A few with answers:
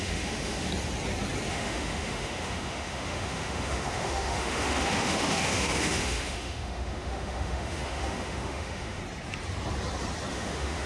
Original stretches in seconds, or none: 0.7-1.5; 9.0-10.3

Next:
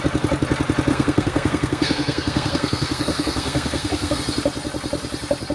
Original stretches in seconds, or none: 0.0-0.9; 4.2-5.5

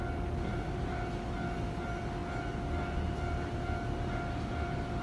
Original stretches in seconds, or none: 0.0-0.5; 1.1-5.0

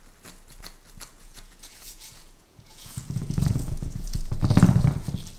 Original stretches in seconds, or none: 0.0-1.1; 4.3-5.4

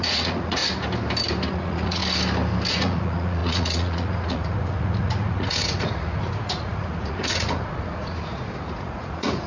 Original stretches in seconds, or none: 0.6-1.5; 2.0-2.7

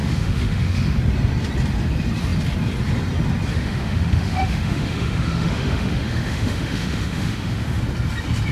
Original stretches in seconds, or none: 1.0-3.5; 7.8-8.5

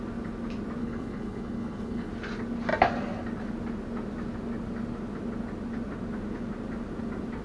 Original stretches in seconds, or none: 0.0-0.8; 2.1-7.4